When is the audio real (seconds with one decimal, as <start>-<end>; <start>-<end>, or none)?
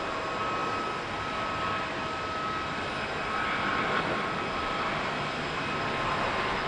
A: 0.0-6.7